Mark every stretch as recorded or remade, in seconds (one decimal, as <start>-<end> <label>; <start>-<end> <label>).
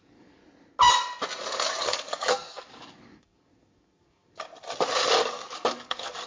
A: 0.0-0.4 remade; 0.4-1.8 recorded; 1.8-4.5 remade; 4.5-5.2 recorded; 5.2-6.3 remade